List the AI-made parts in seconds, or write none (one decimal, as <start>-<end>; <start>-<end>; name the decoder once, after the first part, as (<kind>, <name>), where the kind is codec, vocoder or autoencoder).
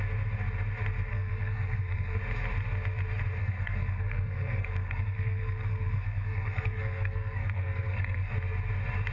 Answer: 1.1-2.2 (codec, SNAC); 3.4-8.3